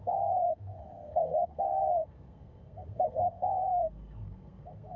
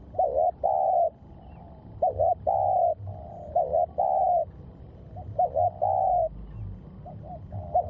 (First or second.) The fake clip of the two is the first